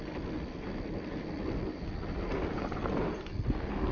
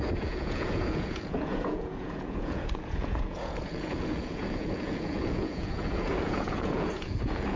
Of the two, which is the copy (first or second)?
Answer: second